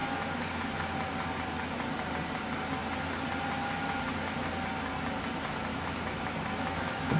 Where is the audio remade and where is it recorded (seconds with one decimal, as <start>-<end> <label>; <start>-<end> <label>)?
0.0-5.7 recorded; 5.7-7.2 remade